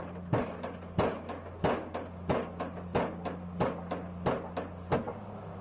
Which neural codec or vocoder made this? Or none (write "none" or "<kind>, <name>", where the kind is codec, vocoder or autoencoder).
none